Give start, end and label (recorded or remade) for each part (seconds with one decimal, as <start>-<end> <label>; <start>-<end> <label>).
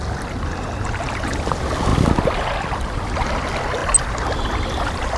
0.0-5.2 recorded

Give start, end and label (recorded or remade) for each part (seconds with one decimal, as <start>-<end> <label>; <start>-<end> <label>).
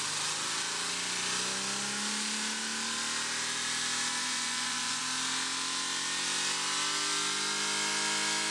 0.0-4.2 recorded; 4.2-5.0 remade; 5.0-8.5 recorded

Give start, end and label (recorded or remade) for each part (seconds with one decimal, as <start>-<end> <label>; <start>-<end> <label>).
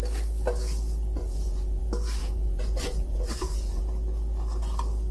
0.0-1.2 recorded; 1.2-1.8 remade; 1.8-2.2 recorded; 2.2-3.8 remade; 3.8-5.1 recorded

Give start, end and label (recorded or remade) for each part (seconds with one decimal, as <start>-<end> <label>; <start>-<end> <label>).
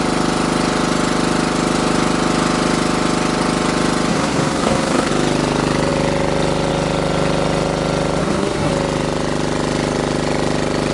0.0-4.1 recorded; 4.1-5.1 remade; 5.1-8.2 recorded; 8.2-8.7 remade; 8.7-10.9 recorded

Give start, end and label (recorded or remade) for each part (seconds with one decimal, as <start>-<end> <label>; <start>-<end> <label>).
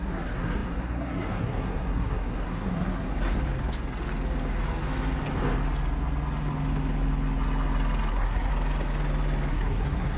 0.0-3.1 remade; 3.1-8.1 recorded; 8.1-8.5 remade; 8.5-9.5 recorded; 9.5-10.2 remade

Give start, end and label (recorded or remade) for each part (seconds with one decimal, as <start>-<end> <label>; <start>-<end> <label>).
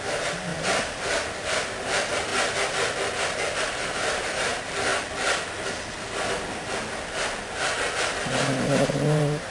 0.0-2.3 remade; 2.3-3.6 recorded; 3.6-4.9 remade; 4.9-8.0 recorded; 8.0-9.5 remade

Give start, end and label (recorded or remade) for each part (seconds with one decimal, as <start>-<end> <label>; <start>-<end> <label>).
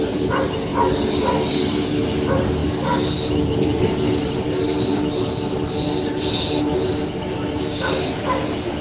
0.0-8.8 recorded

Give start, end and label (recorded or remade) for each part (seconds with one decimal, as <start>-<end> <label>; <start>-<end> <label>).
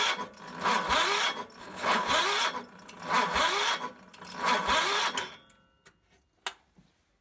0.0-1.6 recorded; 1.6-2.1 remade; 2.1-7.2 recorded